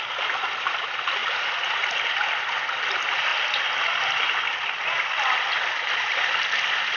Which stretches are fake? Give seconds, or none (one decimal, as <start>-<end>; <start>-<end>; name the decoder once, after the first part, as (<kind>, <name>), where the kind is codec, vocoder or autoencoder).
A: none